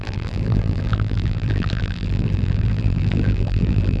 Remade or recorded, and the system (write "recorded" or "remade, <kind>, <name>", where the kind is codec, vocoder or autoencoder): remade, vocoder, BigVGAN v2